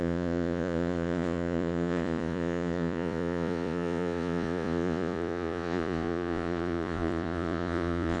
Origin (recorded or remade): remade